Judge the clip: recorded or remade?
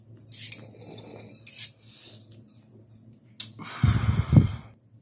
recorded